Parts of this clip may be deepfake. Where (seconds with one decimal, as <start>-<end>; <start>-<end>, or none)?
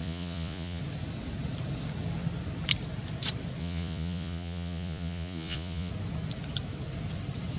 0.0-0.8; 3.6-5.9